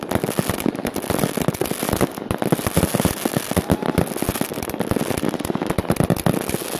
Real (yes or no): yes